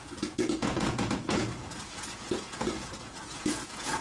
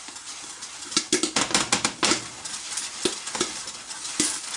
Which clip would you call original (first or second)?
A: second